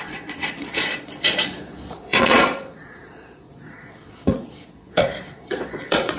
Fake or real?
fake